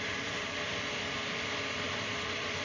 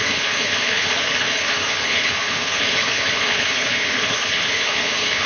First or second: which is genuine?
first